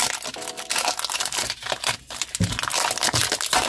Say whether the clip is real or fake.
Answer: real